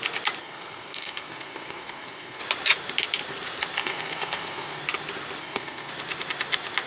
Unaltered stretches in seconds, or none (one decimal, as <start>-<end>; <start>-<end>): 0.0-0.4; 2.4-3.8; 4.8-5.4; 5.9-6.9